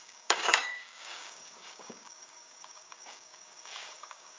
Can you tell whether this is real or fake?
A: fake